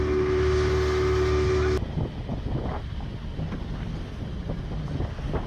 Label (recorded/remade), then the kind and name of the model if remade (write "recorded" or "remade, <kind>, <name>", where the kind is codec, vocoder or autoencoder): recorded